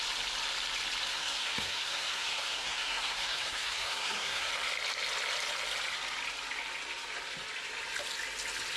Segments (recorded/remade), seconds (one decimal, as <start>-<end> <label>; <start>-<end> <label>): 0.0-1.1 recorded; 1.1-4.5 remade; 4.5-8.8 recorded

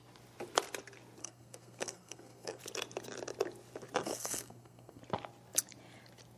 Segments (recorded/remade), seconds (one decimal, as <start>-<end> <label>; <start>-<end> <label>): 0.0-1.2 recorded; 1.2-2.6 remade; 2.6-4.0 recorded; 4.0-5.0 remade; 5.0-6.4 recorded